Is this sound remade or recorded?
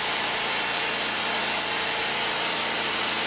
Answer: recorded